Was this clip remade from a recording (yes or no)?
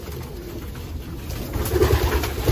no